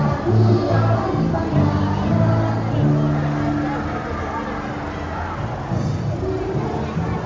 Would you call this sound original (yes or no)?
yes